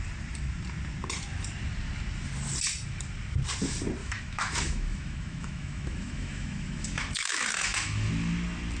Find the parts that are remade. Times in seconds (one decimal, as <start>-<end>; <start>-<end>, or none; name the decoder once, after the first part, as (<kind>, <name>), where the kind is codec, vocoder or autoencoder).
4.0-8.1 (autoencoder, DAC-VAE)

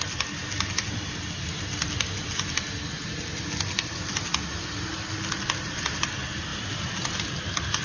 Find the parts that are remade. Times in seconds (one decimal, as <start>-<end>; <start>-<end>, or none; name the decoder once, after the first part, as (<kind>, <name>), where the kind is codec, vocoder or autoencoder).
none

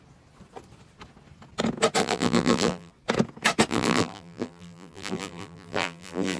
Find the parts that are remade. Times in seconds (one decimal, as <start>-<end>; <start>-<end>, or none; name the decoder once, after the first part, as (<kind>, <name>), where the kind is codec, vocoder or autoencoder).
2.0-2.9 (vocoder, BigVGAN v2); 3.7-6.4

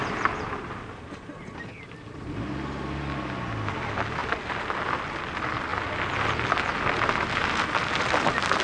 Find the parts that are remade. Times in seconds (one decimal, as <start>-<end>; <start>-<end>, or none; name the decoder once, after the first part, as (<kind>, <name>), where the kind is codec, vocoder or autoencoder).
none

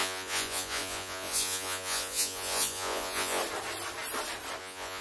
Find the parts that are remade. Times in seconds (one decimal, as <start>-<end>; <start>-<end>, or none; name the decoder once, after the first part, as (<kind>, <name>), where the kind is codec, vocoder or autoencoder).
0.0-3.4 (vocoder, Vocos); 4.6-5.0

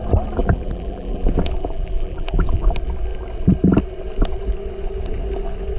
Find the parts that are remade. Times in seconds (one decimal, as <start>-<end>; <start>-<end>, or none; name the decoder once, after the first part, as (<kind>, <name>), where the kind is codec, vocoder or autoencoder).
0.4-2.6 (vocoder, BigVGAN v2)